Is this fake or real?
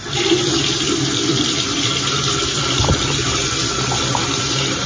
fake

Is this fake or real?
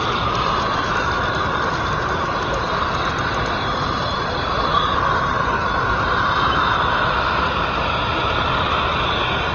fake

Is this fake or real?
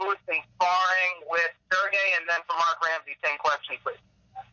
real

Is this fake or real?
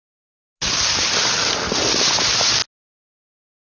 real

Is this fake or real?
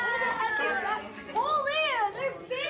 real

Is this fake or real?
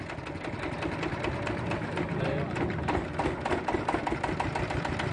fake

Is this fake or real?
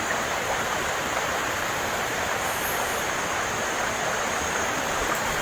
fake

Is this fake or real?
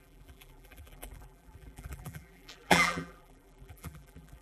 fake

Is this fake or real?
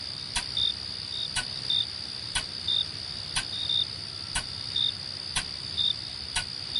fake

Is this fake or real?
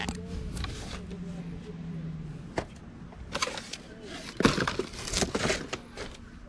real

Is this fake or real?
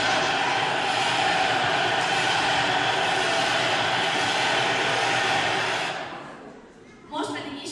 fake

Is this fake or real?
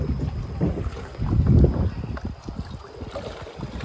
real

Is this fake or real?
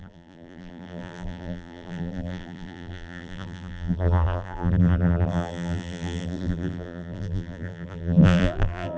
fake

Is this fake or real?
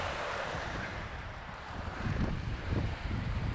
fake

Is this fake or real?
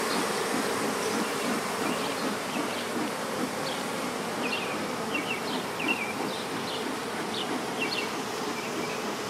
fake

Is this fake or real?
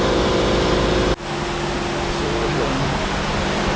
real